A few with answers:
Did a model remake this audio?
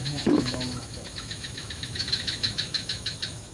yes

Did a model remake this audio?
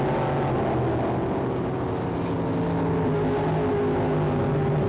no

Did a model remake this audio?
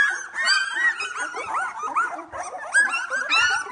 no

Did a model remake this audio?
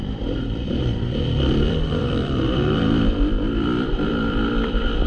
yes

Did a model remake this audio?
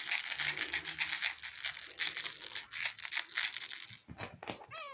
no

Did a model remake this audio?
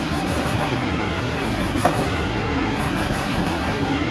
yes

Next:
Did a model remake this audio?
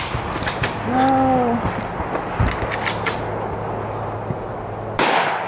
no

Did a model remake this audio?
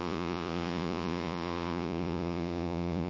yes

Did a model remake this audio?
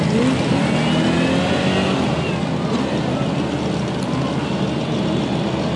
no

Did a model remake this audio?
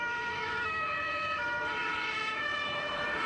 yes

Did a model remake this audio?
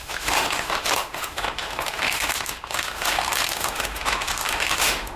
yes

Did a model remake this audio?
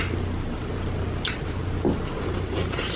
yes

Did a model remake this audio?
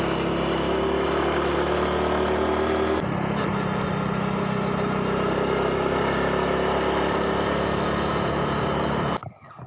no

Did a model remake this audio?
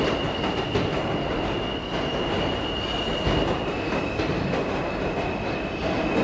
no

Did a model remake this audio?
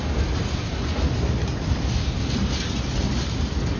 no